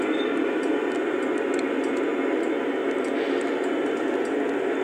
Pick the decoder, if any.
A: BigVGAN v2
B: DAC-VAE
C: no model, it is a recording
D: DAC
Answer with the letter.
C